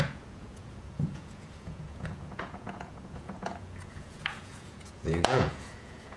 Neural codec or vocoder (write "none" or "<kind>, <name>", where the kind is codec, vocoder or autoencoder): vocoder, Vocos